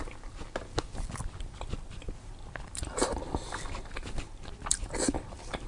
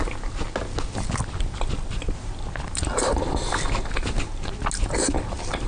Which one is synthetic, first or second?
first